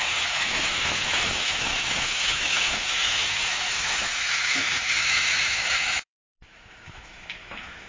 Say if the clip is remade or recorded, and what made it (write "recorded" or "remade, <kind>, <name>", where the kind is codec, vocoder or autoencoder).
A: remade, autoencoder, DAC-VAE